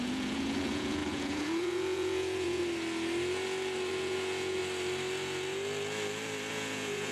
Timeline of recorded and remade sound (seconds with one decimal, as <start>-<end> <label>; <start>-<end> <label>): 0.0-2.6 remade; 2.6-3.9 recorded; 3.9-4.6 remade; 4.6-6.5 recorded; 6.5-7.1 remade